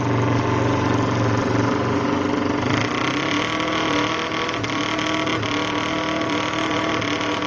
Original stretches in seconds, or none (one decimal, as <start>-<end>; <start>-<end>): 0.0-7.5